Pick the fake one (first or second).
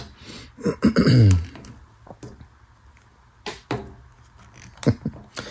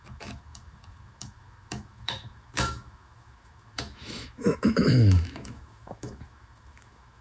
second